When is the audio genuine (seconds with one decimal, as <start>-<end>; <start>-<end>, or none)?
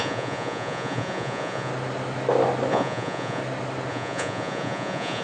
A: 1.7-2.7; 3.4-3.9